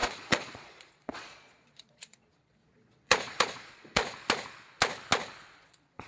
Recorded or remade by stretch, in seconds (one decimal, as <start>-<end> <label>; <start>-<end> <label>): 0.0-4.0 remade; 4.0-5.6 recorded; 5.6-6.1 remade